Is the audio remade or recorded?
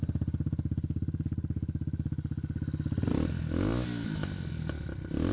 recorded